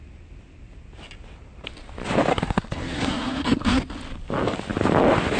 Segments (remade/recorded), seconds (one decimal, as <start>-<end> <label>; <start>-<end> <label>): 0.0-2.3 recorded; 2.3-3.8 remade; 3.8-5.4 recorded